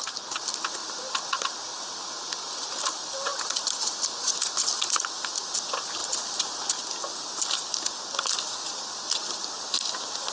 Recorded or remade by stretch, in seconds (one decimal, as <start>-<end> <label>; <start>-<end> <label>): 0.0-10.3 recorded